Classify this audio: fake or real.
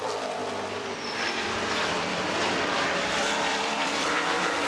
fake